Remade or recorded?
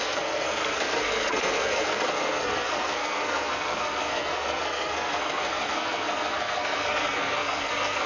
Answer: remade